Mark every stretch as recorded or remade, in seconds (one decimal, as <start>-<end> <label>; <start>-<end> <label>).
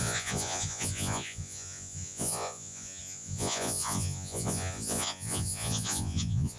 0.0-6.6 remade